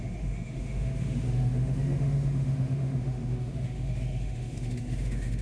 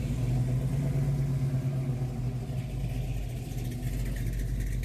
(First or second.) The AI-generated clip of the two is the first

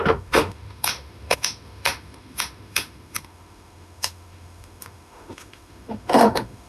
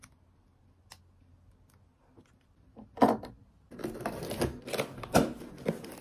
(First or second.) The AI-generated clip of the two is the first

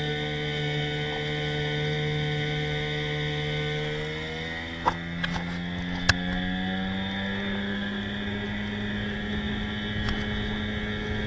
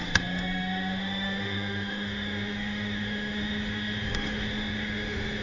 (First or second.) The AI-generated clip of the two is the second